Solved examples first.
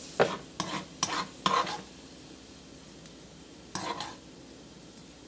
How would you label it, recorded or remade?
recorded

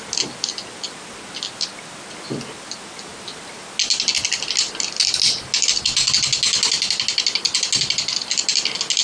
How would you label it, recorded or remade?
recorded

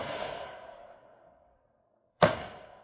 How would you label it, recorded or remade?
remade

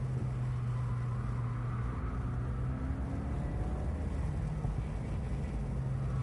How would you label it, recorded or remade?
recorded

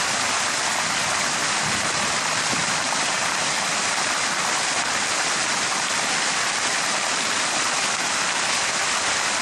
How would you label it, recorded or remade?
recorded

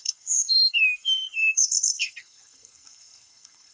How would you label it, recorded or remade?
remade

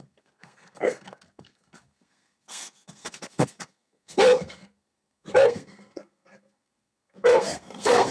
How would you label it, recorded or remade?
remade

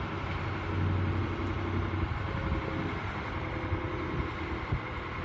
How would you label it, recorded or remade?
recorded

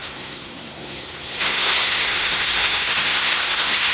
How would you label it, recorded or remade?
remade